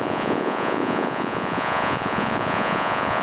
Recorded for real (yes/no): no